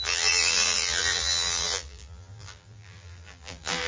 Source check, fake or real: fake